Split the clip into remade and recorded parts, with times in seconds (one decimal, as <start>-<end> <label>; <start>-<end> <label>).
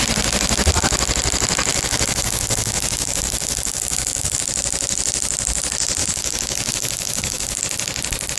0.0-1.7 recorded; 1.7-4.4 remade; 4.4-6.0 recorded; 6.0-7.6 remade; 7.6-8.4 recorded